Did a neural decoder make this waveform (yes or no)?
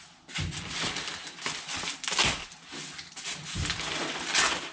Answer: no